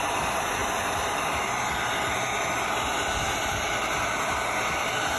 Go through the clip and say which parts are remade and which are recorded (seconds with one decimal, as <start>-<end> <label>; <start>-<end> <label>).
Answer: 0.0-0.6 recorded; 0.6-1.6 remade; 1.6-5.2 recorded